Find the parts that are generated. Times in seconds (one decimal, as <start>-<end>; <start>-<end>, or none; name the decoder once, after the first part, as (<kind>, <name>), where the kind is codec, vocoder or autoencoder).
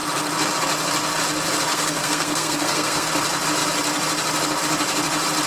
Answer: 1.7-3.1 (codec, SNAC)